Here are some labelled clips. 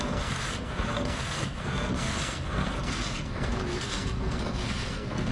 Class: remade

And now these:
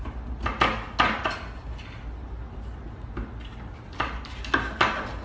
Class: recorded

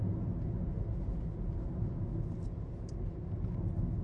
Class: recorded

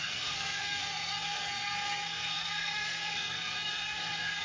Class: remade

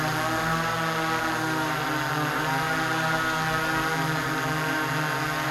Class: recorded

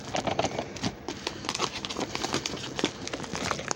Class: recorded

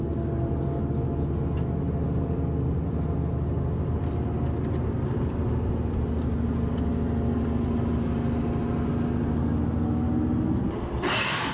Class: recorded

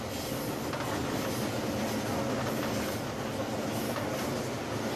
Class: recorded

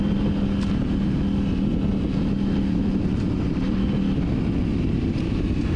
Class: recorded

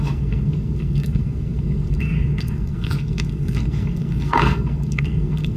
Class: remade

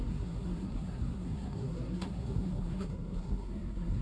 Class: remade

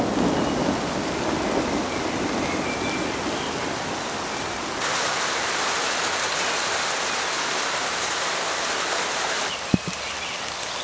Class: recorded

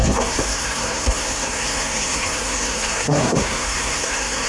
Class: remade